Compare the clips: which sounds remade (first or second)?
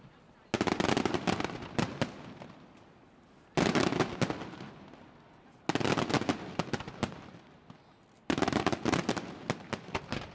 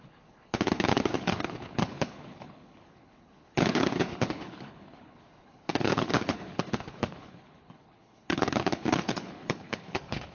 second